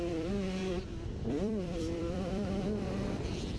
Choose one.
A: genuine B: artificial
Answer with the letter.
B